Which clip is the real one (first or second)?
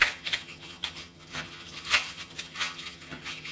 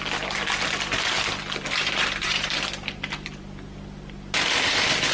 second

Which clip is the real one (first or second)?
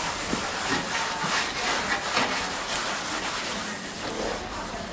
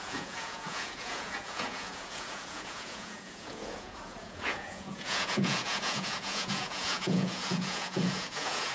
first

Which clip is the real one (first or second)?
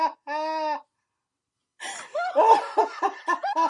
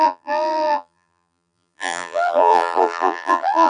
first